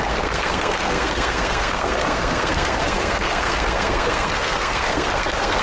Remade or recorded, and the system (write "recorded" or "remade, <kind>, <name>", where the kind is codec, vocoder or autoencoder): remade, codec, SNAC